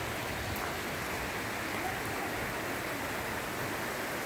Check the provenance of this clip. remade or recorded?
recorded